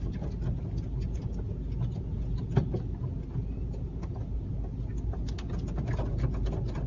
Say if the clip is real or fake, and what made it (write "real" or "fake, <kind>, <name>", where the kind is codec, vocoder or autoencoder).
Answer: real